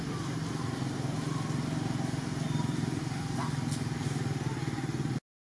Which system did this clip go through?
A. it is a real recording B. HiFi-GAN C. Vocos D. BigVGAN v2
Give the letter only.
A